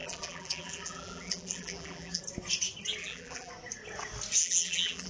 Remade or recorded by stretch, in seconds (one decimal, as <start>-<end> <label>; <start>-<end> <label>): 0.0-2.2 remade; 2.2-3.0 recorded; 3.0-3.5 remade; 3.5-4.4 recorded; 4.4-5.1 remade